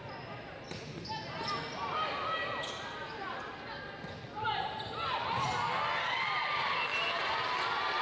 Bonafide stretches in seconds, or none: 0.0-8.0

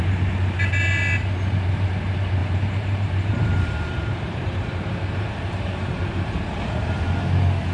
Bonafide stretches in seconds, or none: 0.0-2.4; 7.0-7.7

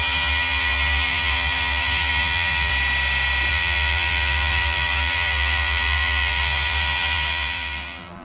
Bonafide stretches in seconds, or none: 2.7-3.5

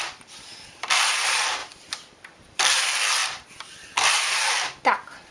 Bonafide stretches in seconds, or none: none

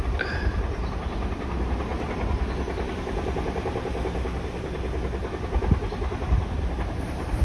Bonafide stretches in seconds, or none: 0.0-7.4

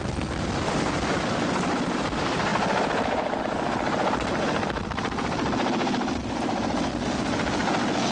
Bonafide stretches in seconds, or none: 0.0-8.1

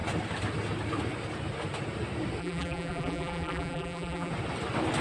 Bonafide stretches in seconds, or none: 0.0-2.4; 4.3-5.0

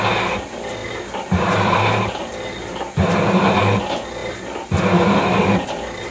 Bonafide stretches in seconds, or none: 0.0-0.8; 3.5-4.2